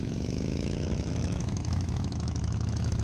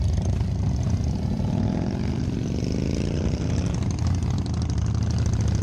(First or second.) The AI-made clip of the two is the first